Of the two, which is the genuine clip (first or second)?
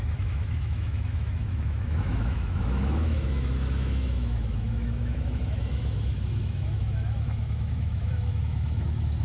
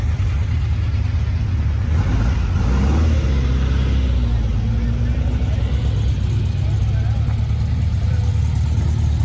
second